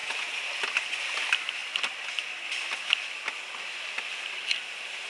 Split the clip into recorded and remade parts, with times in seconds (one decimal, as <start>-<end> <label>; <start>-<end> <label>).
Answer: 0.0-5.1 recorded